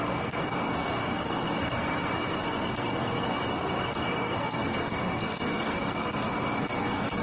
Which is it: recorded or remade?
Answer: remade